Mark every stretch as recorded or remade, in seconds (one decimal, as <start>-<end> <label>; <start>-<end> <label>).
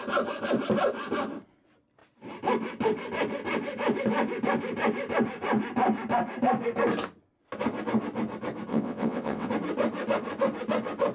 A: 0.0-8.7 recorded; 8.7-9.5 remade; 9.5-11.1 recorded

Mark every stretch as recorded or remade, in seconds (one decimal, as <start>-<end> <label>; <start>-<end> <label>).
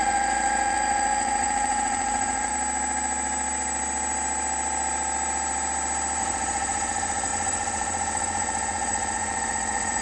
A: 0.0-2.5 remade; 2.5-6.2 recorded; 6.2-10.0 remade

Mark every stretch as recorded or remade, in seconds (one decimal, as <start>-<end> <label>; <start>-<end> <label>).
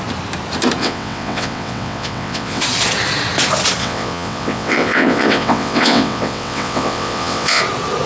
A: 0.0-0.8 recorded; 0.8-2.6 remade; 2.6-3.8 recorded; 3.8-7.6 remade; 7.6-8.1 recorded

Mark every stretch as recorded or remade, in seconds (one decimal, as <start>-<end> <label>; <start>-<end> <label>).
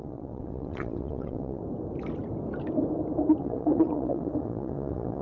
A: 0.0-1.6 remade; 1.6-3.4 recorded; 3.4-5.2 remade